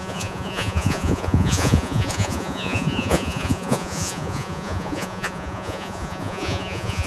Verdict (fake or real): fake